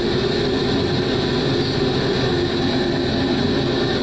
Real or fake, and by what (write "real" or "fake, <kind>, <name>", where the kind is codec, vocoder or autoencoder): real